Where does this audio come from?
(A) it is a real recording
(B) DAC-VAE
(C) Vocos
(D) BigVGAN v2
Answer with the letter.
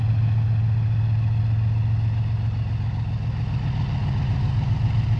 A